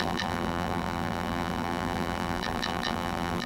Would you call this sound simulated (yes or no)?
yes